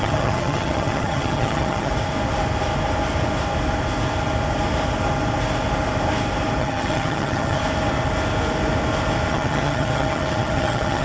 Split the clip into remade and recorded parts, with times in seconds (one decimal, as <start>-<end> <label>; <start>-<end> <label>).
0.0-1.9 remade; 1.9-6.6 recorded; 6.6-7.6 remade; 7.6-9.3 recorded; 9.3-11.0 remade